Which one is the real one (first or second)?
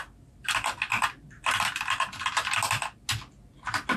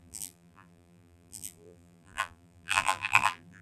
first